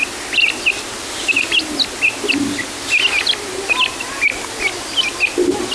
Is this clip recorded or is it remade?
recorded